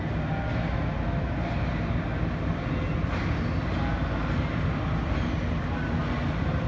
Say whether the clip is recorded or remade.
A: recorded